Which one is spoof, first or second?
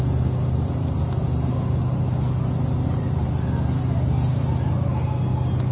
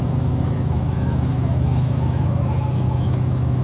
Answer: second